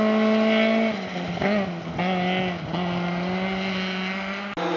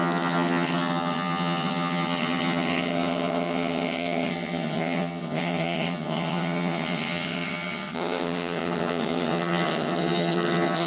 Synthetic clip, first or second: second